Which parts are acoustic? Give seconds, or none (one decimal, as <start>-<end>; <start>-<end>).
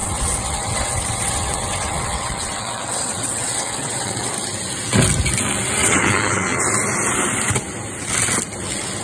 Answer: 4.3-5.8; 6.6-9.0